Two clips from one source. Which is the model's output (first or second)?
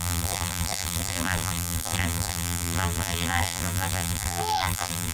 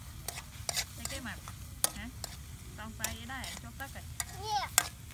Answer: first